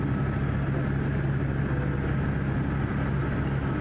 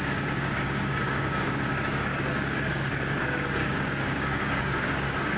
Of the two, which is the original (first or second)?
first